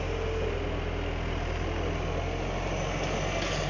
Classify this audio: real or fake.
real